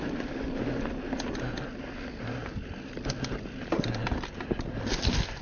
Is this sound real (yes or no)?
yes